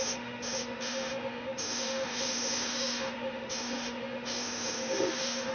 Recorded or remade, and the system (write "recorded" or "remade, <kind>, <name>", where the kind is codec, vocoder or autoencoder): remade, autoencoder, DAC-VAE